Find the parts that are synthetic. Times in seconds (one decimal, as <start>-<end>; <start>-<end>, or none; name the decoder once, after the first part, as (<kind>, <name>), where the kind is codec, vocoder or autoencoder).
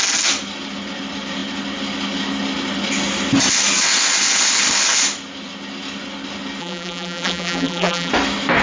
6.6-8.1 (vocoder, BigVGAN v2)